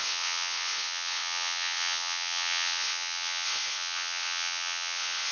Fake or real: fake